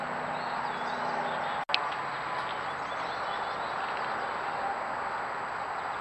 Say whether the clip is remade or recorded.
recorded